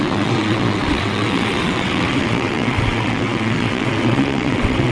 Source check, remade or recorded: remade